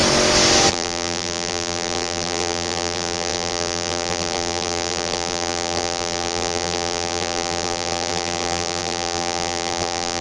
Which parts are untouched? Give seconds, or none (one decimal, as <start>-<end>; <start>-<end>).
0.0-0.7